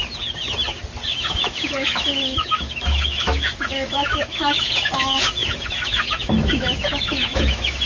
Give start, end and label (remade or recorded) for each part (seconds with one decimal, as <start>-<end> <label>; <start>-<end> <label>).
0.0-1.1 recorded; 1.1-7.8 remade